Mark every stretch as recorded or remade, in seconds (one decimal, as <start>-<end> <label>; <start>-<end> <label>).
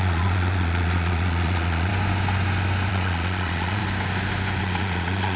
0.0-1.9 remade; 1.9-2.9 recorded; 2.9-3.8 remade; 3.8-4.6 recorded; 4.6-5.4 remade